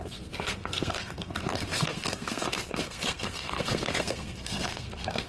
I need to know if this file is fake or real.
fake